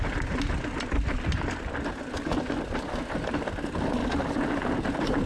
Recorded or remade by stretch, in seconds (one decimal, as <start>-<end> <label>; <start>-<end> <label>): 0.0-5.3 recorded